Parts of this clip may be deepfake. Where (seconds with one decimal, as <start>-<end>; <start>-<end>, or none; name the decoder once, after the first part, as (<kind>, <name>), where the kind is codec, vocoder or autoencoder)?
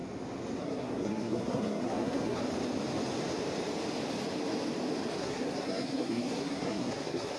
0.6-2.4 (codec, SNAC); 5.2-7.4